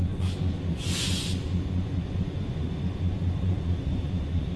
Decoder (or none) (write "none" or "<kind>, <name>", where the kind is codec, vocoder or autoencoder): vocoder, Vocos